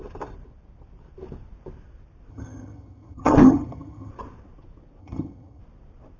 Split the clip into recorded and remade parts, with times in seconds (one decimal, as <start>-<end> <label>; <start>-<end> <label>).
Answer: 0.0-2.3 recorded; 2.3-4.1 remade; 4.1-5.0 recorded; 5.0-5.6 remade; 5.6-6.2 recorded

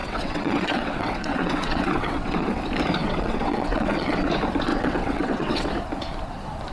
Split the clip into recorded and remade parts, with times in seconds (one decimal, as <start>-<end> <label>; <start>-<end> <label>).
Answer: 0.0-2.6 remade; 2.6-3.0 recorded; 3.0-4.3 remade; 4.3-4.7 recorded; 4.7-5.7 remade; 5.7-6.7 recorded

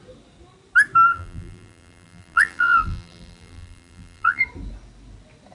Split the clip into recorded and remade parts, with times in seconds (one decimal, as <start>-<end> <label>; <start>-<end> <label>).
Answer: 0.0-1.1 recorded; 1.1-4.4 remade; 4.4-5.5 recorded